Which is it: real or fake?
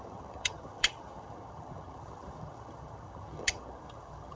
fake